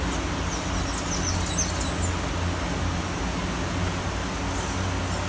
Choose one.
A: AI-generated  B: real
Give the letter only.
B